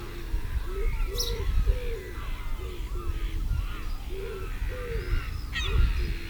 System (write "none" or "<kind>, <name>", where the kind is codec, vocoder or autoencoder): none